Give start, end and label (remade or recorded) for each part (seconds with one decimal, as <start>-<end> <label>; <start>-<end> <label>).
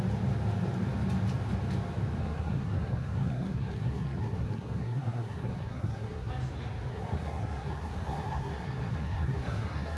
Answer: 0.0-2.2 recorded; 2.2-6.3 remade; 6.3-6.9 recorded; 6.9-10.0 remade